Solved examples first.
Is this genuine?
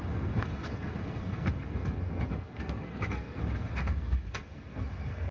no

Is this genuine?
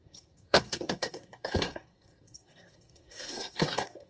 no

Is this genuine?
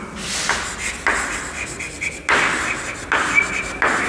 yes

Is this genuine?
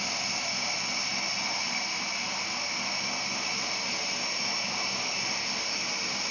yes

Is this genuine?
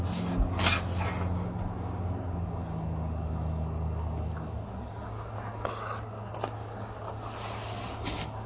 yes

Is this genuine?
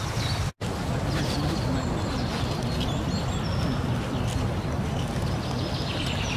yes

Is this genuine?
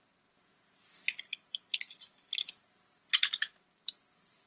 yes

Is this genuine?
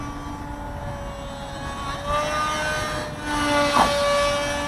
yes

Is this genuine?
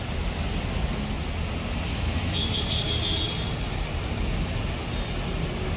yes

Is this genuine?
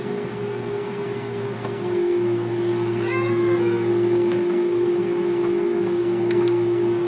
no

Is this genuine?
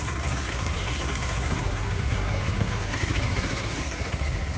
no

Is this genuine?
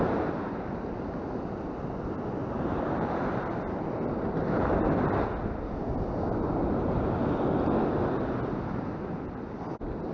yes